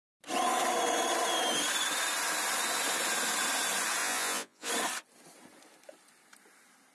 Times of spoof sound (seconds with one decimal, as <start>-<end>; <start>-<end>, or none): 4.0-4.7